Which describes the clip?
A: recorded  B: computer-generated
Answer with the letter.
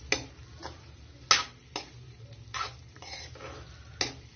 A